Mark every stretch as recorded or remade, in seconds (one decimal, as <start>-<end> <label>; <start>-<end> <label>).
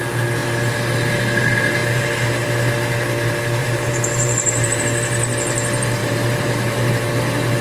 0.0-1.8 recorded; 1.8-2.7 remade; 2.7-3.6 recorded; 3.6-4.8 remade; 4.8-6.0 recorded; 6.0-7.0 remade; 7.0-7.6 recorded